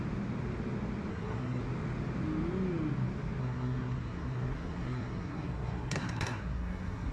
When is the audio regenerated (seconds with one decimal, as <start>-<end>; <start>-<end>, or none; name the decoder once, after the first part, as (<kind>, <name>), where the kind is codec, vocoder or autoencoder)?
1.1-1.6 (codec, SNAC); 3.4-7.1